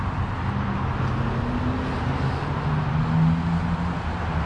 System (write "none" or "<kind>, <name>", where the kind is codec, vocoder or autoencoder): none